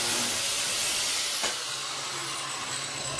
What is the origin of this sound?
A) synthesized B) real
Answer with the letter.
B